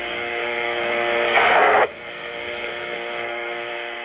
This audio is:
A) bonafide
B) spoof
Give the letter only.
B